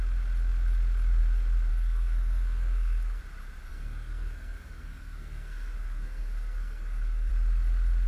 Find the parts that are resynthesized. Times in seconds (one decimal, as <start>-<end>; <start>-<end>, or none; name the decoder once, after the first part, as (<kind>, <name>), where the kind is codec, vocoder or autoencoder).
1.7-3.2 (codec, SNAC); 3.7-7.3